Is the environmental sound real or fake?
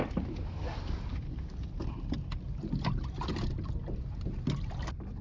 real